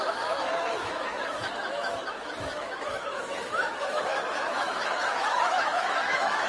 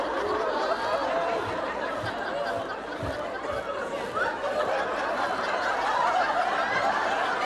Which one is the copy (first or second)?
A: first